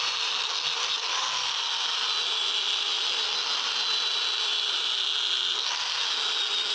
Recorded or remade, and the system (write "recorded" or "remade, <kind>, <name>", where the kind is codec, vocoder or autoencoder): recorded